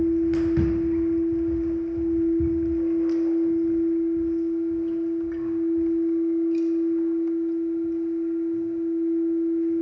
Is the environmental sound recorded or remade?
recorded